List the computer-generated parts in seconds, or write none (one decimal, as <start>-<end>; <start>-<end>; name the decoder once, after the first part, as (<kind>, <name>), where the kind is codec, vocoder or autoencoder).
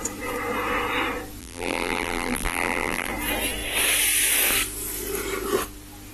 1.4-3.1 (vocoder, BigVGAN v2)